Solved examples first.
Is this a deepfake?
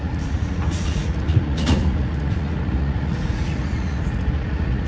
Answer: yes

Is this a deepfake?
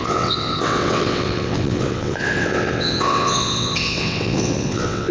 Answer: yes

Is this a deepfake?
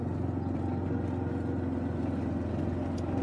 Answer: no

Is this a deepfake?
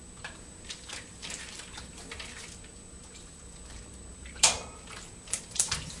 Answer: yes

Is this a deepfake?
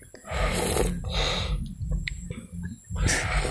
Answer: no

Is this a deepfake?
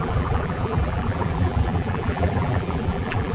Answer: yes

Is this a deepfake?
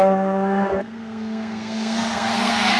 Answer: yes